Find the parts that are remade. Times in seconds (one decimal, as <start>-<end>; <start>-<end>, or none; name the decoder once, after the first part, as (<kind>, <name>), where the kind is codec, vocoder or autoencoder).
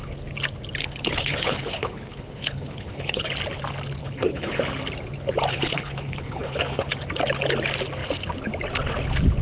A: 0.8-3.3 (codec, HILCodec); 4.0-4.6; 5.5-6.9